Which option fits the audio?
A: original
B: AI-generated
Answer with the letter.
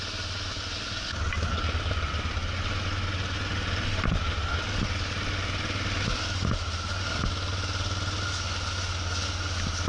A